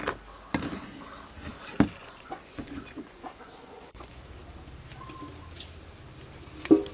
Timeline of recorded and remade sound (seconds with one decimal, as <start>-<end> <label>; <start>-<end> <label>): 0.0-2.0 recorded; 2.0-4.2 remade; 4.2-6.9 recorded